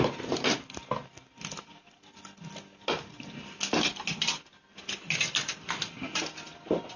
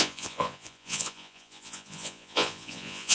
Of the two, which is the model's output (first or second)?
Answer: second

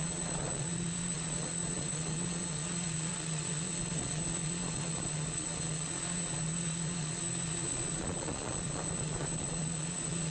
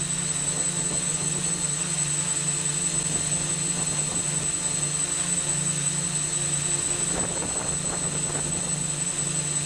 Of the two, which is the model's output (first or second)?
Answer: first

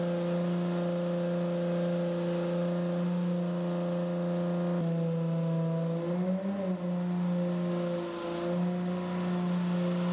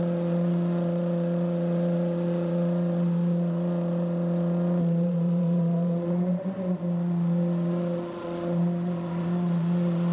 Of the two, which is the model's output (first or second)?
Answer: second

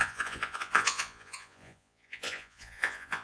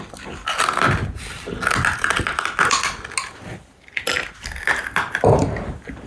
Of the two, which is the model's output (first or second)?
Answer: first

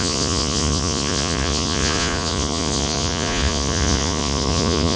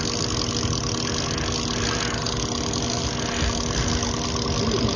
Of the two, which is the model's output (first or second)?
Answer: first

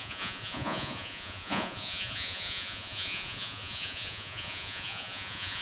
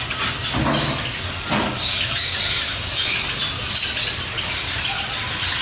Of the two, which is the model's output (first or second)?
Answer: first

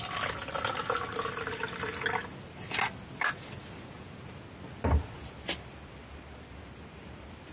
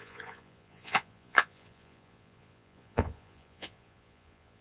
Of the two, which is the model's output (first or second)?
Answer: second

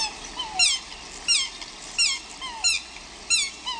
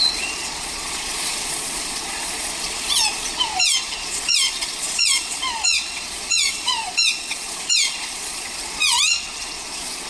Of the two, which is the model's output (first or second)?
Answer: second